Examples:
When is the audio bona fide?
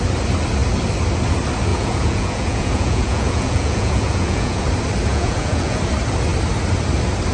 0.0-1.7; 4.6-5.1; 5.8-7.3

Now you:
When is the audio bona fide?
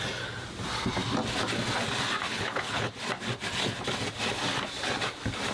0.0-2.3; 2.9-5.5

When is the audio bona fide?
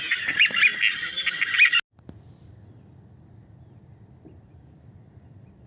0.7-3.9